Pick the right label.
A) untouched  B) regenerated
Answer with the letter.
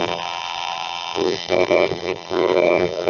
B